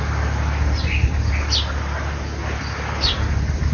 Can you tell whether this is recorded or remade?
recorded